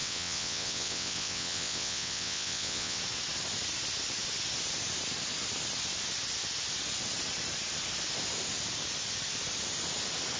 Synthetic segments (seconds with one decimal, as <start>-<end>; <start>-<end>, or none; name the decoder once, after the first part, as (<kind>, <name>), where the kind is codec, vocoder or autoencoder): 0.0-3.0 (vocoder, WaveNeXt)